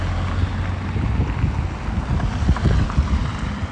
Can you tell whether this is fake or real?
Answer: real